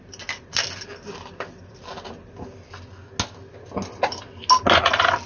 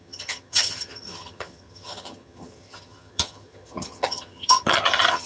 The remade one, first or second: second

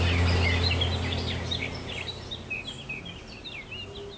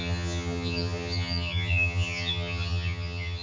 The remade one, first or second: second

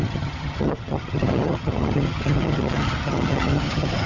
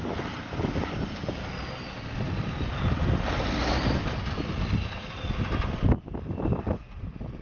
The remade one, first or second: first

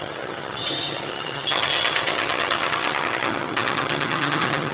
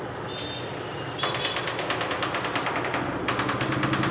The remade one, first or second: first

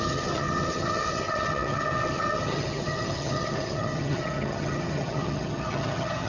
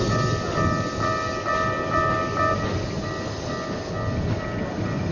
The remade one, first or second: first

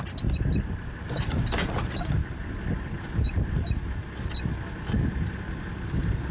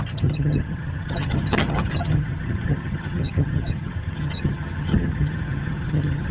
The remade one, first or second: second